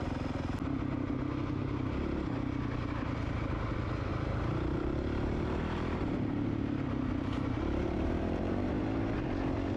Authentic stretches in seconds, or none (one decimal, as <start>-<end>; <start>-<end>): 0.0-4.1; 8.7-9.8